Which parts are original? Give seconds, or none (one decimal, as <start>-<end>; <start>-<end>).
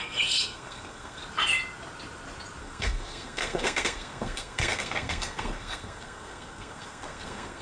1.2-2.6